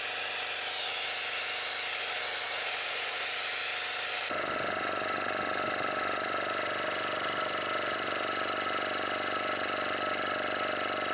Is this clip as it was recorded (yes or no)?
yes